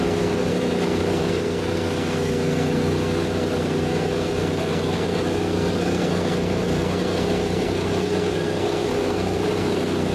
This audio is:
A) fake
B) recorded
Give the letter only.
A